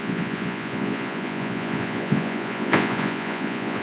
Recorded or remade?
remade